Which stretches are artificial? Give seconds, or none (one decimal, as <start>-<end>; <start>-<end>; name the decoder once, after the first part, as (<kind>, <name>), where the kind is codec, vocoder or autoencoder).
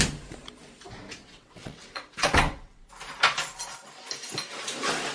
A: 1.2-2.9 (vocoder, WaveNeXt)